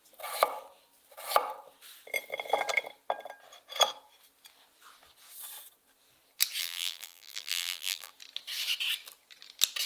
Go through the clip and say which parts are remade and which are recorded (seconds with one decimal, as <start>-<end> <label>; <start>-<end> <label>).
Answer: 0.0-6.6 recorded; 6.6-8.1 remade; 8.1-9.9 recorded